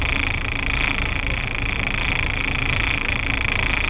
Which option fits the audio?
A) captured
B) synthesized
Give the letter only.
A